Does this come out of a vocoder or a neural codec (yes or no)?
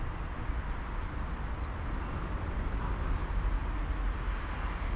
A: no